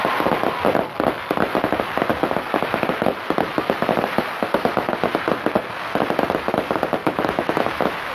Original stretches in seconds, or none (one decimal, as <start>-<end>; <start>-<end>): 0.0-7.0